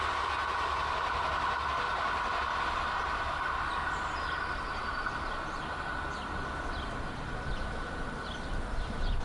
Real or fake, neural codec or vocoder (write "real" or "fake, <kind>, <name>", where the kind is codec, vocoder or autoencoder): real